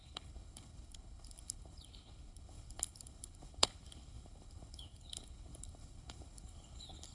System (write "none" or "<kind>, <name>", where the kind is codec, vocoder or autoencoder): codec, HILCodec